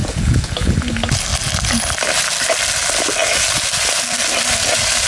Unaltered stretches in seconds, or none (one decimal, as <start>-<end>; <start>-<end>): 0.7-5.1